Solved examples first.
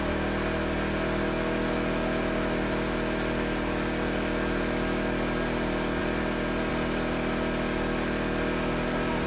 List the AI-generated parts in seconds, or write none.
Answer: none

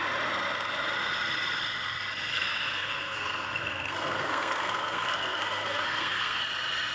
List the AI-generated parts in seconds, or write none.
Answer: 2.3-6.4 (codec, SNAC)

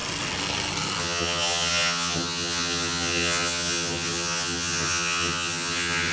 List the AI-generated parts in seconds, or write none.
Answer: 1.0-6.1 (vocoder, HiFi-GAN)